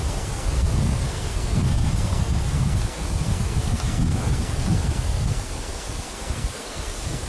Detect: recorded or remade remade